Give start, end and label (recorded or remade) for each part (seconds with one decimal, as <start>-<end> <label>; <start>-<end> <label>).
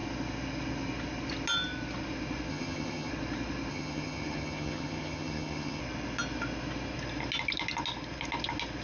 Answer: 0.0-2.5 recorded; 2.5-3.1 remade; 3.1-3.7 recorded; 3.7-5.8 remade; 5.8-8.8 recorded